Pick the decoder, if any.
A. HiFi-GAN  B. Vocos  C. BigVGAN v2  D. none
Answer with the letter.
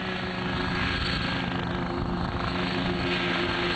D